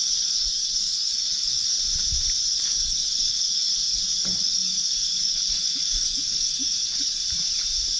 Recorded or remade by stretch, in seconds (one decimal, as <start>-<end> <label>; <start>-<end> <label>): 0.0-1.7 remade; 1.7-2.4 recorded; 2.4-7.2 remade; 7.2-8.0 recorded